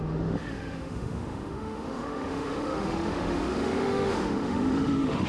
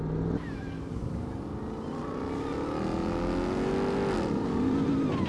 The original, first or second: second